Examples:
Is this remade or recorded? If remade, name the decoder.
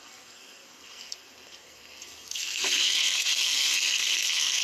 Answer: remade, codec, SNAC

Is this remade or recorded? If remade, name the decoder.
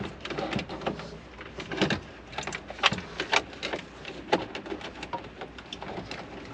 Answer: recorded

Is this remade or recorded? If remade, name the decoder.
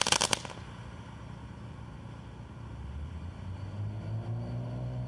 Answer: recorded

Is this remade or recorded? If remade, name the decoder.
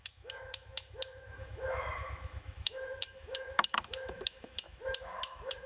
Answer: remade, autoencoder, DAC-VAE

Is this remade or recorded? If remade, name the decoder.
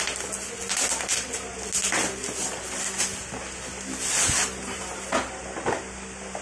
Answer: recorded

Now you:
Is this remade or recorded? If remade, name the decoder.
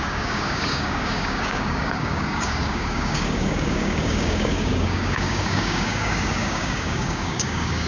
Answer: remade, codec, DAC